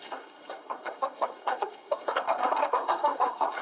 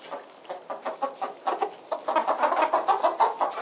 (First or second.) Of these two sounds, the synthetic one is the first